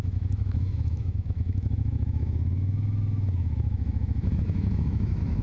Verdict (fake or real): fake